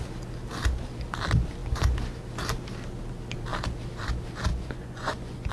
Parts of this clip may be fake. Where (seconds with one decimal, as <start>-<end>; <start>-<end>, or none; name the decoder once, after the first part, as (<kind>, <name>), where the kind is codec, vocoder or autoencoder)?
4.5-5.5 (vocoder, Vocos)